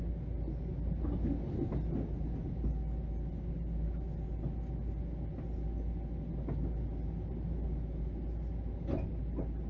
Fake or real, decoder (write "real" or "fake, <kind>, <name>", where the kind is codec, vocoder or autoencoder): real